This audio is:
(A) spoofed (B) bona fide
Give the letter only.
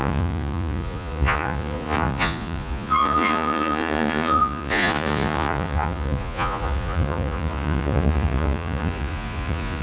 A